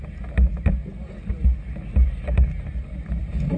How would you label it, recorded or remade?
recorded